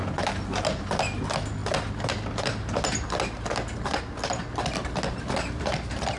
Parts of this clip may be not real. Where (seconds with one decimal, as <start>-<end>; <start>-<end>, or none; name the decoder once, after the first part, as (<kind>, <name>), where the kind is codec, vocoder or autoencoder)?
none